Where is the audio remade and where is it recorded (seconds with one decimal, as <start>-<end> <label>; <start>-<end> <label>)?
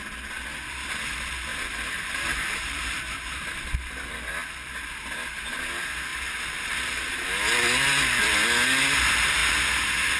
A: 0.0-1.5 recorded; 1.5-4.3 remade; 4.3-6.1 recorded; 6.1-7.3 remade; 7.3-10.2 recorded